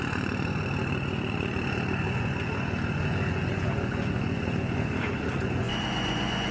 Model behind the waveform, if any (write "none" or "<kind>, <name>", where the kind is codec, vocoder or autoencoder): vocoder, Vocos